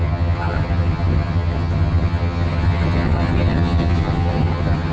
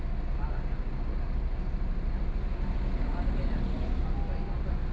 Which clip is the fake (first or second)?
first